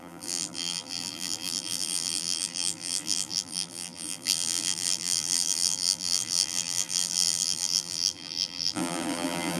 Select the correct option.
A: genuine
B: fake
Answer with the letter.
B